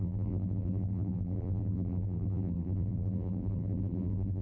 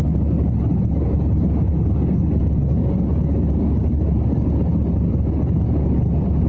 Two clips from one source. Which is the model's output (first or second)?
first